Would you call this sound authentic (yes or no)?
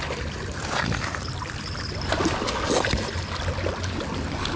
yes